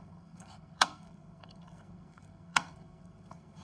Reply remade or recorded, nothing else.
remade